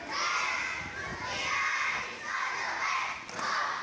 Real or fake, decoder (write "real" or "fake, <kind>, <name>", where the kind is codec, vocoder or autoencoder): real